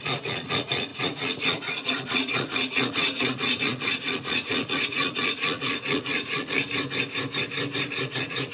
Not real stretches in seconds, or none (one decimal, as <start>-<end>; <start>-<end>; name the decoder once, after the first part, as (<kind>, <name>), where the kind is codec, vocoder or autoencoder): 0.0-6.6 (vocoder, Vocos); 8.0-8.5